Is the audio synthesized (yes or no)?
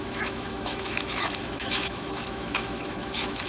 yes